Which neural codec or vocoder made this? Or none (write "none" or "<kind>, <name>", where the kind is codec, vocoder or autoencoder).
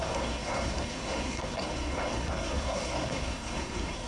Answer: codec, SNAC